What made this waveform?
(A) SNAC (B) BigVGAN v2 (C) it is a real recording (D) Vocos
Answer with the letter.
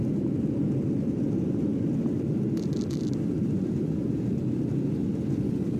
C